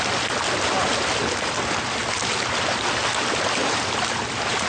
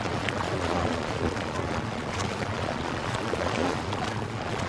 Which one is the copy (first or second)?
second